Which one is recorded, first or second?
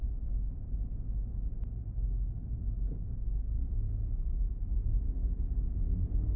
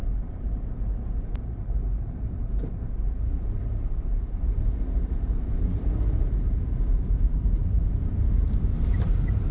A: first